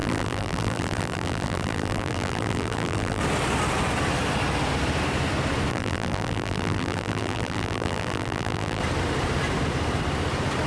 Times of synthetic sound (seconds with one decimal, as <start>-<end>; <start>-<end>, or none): 0.0-3.2; 5.7-8.8